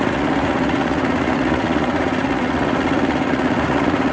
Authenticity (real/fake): fake